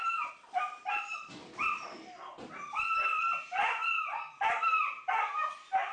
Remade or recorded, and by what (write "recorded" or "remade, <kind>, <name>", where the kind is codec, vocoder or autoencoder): recorded